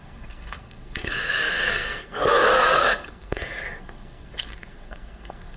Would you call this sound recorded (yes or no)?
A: no